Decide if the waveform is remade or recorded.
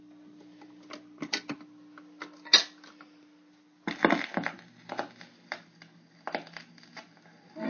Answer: recorded